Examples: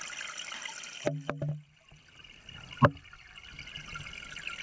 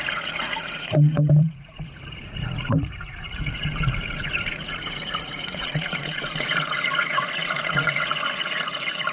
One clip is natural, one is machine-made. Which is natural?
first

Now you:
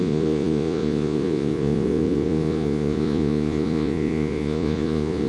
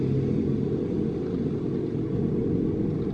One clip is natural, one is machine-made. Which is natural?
second